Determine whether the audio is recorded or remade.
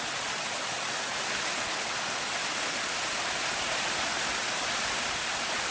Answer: recorded